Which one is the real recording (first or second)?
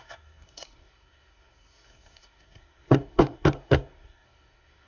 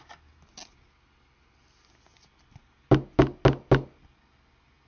second